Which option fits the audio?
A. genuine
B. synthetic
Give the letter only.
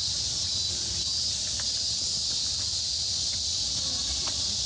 A